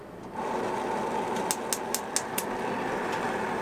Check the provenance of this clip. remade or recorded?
recorded